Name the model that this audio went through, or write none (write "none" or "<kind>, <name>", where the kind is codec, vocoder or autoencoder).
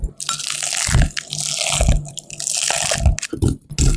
none